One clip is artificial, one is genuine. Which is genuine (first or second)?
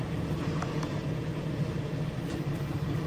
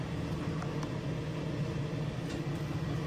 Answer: second